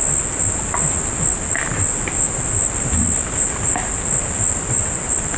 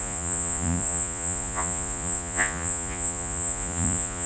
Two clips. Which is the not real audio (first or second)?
second